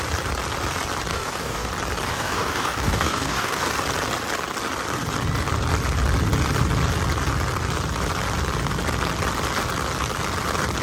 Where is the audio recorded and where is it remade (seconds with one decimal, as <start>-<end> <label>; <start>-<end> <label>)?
0.0-1.1 recorded; 1.1-1.7 remade; 1.7-2.1 recorded; 2.1-3.7 remade; 3.7-10.8 recorded